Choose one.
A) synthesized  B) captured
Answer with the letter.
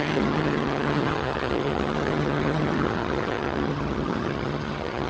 A